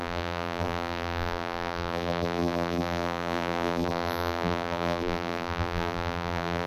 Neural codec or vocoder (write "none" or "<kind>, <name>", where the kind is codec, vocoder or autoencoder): vocoder, BigVGAN v2